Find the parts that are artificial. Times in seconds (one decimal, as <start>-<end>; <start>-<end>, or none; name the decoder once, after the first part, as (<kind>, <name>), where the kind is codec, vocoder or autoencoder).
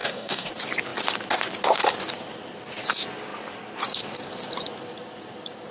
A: 0.0-0.5 (codec, DAC)